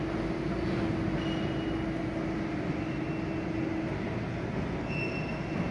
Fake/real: real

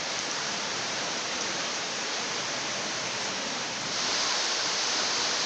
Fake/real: fake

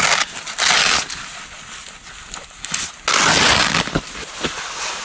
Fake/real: real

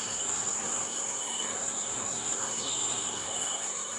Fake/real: fake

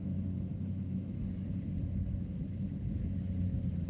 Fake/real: fake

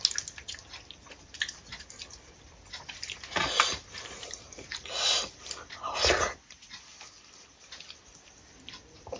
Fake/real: real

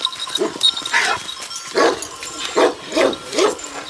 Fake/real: real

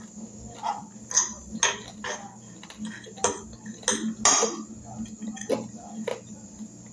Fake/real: real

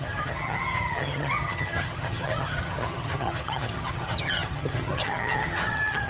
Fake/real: fake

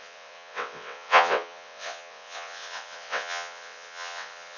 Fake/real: fake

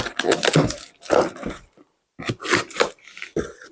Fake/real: real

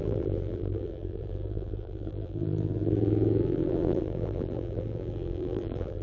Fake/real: fake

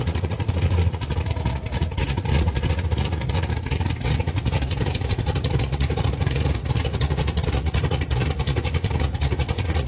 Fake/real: fake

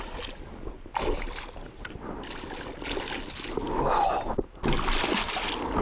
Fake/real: real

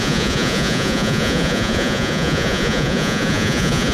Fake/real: fake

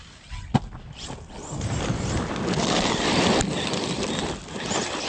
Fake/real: real